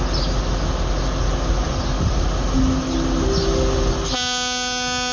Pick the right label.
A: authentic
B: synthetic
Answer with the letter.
A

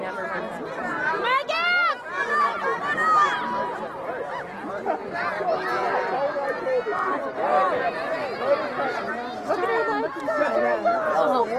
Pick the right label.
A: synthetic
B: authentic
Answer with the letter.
B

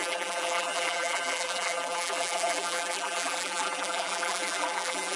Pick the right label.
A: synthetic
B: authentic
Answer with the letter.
A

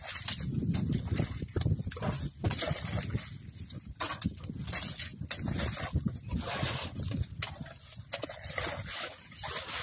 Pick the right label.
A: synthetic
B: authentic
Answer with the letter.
B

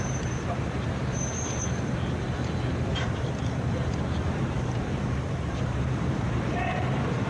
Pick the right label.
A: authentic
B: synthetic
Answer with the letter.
B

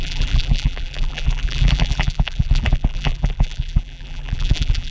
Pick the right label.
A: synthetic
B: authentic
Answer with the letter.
A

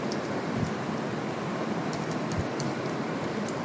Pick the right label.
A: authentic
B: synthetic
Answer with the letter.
B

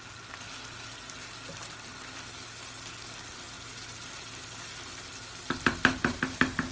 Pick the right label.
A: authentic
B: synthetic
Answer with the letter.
A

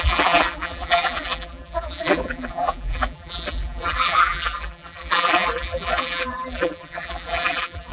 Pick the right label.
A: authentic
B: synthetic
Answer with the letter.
B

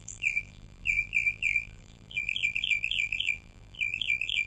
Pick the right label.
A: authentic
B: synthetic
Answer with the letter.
B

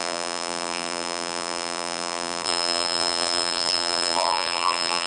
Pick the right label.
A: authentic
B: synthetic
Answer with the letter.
B